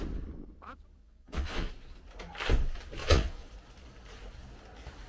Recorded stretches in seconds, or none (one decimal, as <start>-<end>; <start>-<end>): 0.0-1.0; 1.7-3.0; 3.5-5.1